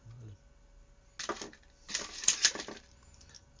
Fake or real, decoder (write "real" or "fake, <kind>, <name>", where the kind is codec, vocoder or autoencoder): real